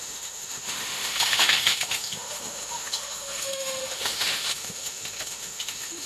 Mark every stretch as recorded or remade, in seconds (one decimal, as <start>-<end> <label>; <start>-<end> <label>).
0.0-6.1 remade